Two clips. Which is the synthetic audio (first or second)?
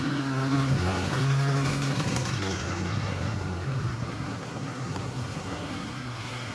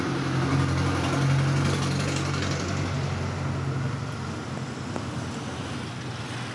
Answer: first